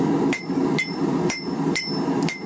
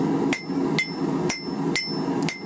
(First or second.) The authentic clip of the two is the second